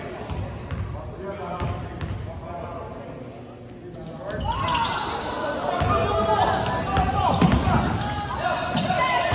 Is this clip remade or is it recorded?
recorded